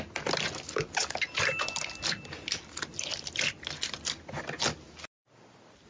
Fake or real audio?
real